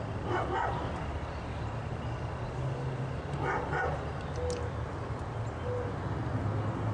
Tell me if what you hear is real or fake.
real